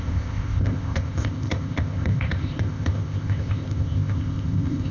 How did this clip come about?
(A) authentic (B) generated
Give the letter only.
B